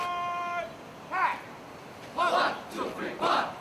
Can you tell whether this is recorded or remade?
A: recorded